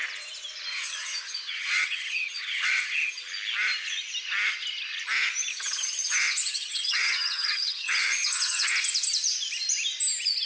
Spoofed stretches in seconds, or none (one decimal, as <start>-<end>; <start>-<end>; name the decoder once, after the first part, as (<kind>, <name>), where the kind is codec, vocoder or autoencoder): 0.7-3.2 (vocoder, HiFi-GAN); 5.5-8.7